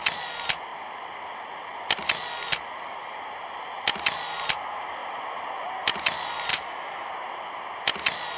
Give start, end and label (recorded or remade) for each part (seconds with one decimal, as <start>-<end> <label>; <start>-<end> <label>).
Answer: 0.0-6.5 recorded; 6.5-7.1 remade; 7.1-8.4 recorded